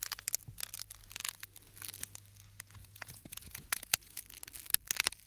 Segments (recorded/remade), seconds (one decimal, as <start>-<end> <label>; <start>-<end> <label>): 0.0-2.8 recorded; 2.8-4.2 remade; 4.2-5.3 recorded

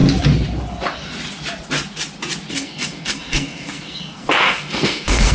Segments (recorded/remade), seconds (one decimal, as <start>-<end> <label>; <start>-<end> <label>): 0.0-2.5 recorded; 2.5-5.3 remade